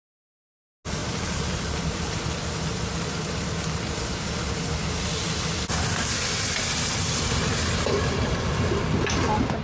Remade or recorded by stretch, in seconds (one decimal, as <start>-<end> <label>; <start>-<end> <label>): 0.0-1.0 recorded; 1.0-2.2 remade; 2.2-9.6 recorded